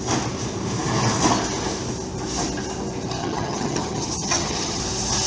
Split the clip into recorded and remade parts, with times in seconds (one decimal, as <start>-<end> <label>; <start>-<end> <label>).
0.0-3.2 recorded; 3.2-4.8 remade; 4.8-5.3 recorded